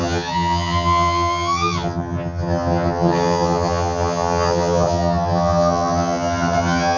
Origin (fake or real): fake